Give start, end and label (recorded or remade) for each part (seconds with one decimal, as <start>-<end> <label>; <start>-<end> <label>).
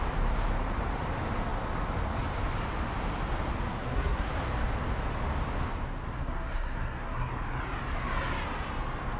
0.0-3.7 recorded; 3.7-4.3 remade; 4.3-6.2 recorded; 6.2-7.3 remade; 7.3-9.2 recorded